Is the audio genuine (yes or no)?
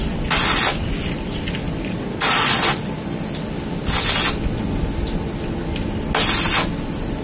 yes